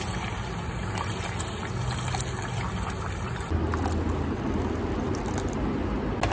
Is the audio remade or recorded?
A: recorded